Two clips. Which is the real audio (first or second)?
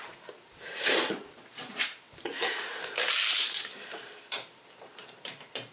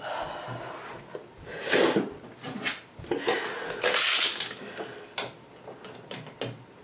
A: second